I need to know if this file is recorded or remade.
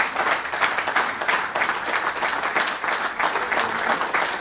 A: recorded